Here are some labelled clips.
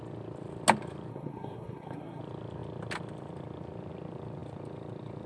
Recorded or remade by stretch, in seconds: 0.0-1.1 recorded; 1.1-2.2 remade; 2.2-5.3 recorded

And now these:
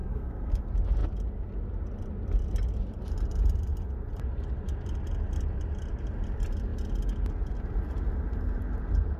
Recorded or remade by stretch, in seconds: 0.0-0.6 remade; 0.6-9.2 recorded

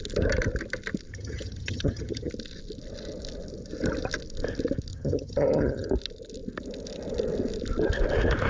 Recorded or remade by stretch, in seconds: 0.0-1.1 recorded; 1.1-2.3 remade; 2.3-4.9 recorded; 4.9-5.9 remade; 5.9-8.5 recorded

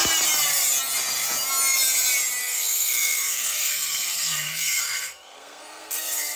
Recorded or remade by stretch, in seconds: 0.0-2.4 recorded; 2.4-6.4 remade